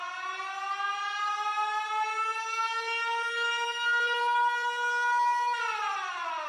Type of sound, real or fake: real